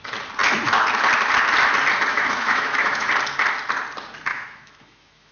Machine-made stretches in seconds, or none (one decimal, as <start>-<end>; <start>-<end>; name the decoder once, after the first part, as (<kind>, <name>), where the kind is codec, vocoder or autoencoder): 2.1-3.1 (autoencoder, DAC-VAE); 4.3-5.3